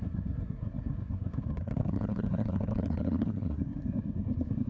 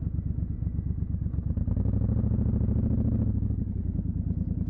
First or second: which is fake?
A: first